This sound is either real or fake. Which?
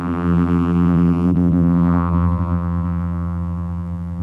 fake